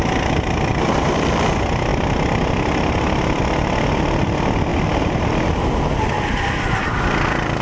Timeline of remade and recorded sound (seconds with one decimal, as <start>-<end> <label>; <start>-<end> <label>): 0.0-4.7 recorded; 4.7-5.5 remade; 5.5-7.6 recorded